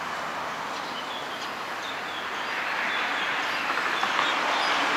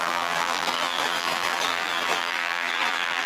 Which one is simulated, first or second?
second